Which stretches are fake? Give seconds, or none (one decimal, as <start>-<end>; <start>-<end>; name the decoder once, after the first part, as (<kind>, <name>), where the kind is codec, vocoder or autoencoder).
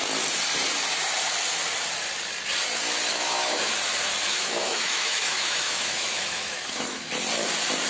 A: 3.1-3.7 (autoencoder, DAC-VAE); 4.3-7.1